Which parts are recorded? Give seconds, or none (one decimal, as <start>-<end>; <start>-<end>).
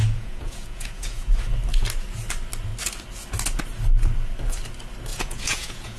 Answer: 1.4-5.1